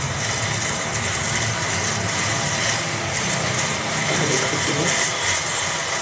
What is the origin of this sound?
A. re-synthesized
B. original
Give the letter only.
B